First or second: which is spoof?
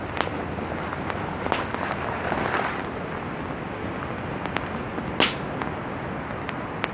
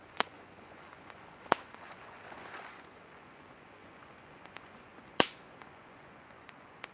second